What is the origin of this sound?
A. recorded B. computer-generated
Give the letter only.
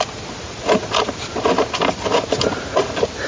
A